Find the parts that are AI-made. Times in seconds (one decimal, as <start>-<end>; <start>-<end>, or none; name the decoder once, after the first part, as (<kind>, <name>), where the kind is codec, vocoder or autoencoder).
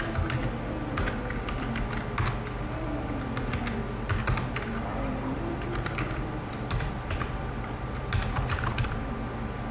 4.9-9.2 (vocoder, BigVGAN v2)